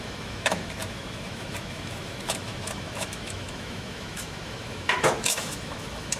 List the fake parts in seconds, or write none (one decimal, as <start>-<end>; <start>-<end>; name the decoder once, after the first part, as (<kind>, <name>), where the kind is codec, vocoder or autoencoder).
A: 0.0-6.2 (autoencoder, DAC-VAE)